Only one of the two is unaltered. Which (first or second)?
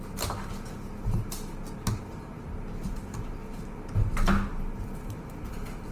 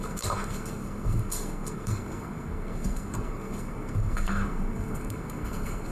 first